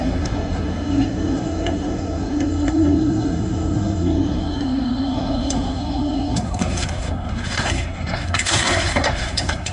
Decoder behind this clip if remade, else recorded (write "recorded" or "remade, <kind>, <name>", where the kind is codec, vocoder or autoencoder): remade, codec, SNAC